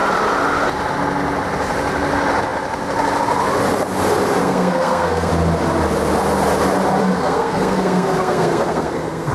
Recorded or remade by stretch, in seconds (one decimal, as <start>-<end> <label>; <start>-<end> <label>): 0.0-4.4 recorded; 4.4-5.3 remade; 5.3-7.0 recorded; 7.0-9.3 remade